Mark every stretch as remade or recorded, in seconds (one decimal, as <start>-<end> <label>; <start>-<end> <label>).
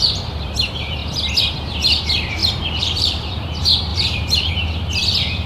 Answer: 0.0-2.4 recorded; 2.4-3.3 remade; 3.3-3.9 recorded; 3.9-4.5 remade; 4.5-5.5 recorded